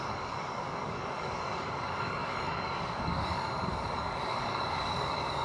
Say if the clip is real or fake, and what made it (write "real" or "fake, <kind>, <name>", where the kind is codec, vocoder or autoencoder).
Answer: fake, codec, DAC